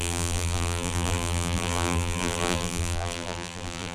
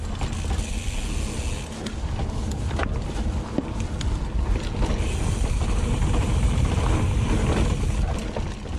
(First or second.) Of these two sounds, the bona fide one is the second